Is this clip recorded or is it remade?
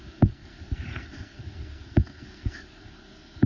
remade